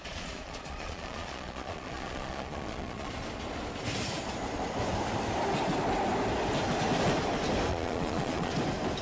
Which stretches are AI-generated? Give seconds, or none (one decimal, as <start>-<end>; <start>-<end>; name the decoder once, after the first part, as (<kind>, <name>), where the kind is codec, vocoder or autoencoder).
0.0-3.1 (vocoder, Vocos); 7.7-8.5